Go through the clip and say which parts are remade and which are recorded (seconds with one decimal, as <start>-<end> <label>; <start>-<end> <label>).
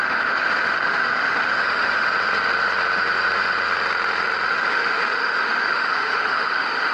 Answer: 0.0-2.1 remade; 2.1-4.5 recorded; 4.5-6.9 remade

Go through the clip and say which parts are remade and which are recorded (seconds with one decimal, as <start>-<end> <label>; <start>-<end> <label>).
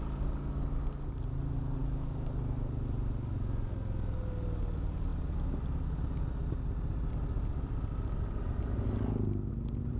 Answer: 0.0-10.0 recorded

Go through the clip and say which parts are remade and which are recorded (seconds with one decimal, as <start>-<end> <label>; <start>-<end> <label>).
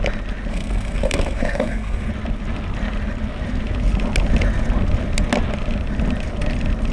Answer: 0.0-0.5 recorded; 0.5-2.1 remade; 2.1-6.9 recorded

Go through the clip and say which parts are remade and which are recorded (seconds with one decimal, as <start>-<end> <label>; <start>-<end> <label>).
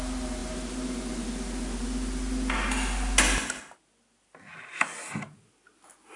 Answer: 0.0-6.2 recorded